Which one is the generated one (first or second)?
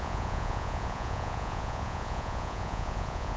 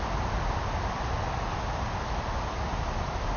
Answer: first